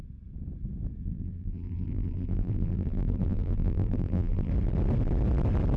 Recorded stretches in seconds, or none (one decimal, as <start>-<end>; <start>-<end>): 0.0-1.0; 4.5-5.8